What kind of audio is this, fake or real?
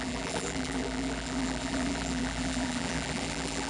fake